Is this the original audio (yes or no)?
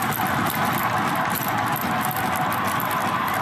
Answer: yes